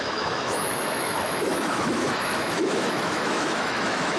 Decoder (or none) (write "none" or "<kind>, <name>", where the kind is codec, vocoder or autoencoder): autoencoder, DAC-VAE